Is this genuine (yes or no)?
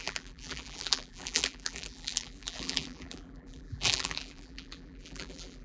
no